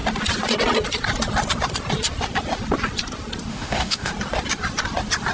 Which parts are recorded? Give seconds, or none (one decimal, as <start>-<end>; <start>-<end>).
0.0-3.5; 4.1-5.3